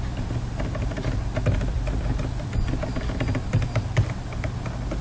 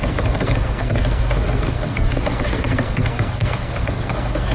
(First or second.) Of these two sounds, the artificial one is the second